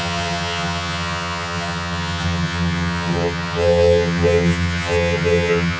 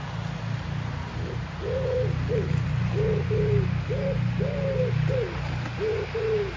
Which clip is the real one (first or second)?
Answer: second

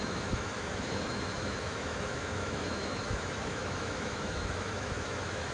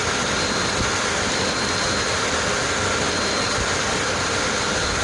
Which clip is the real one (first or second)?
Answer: second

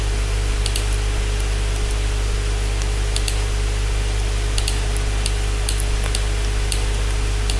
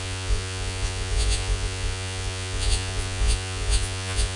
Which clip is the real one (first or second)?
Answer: first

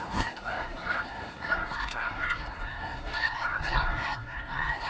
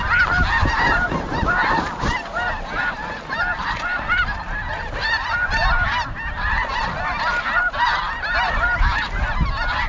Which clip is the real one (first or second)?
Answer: second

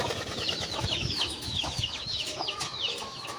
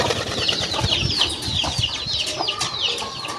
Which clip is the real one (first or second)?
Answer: second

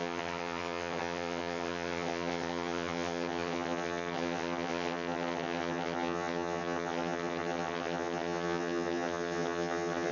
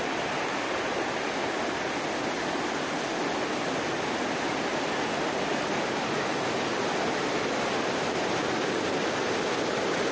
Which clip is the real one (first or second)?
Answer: second